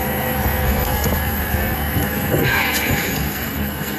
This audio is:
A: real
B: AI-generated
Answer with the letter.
B